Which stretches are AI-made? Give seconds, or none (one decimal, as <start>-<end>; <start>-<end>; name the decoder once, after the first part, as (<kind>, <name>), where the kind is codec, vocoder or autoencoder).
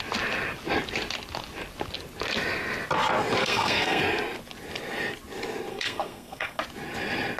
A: 3.4-4.0 (codec, SNAC); 5.7-6.6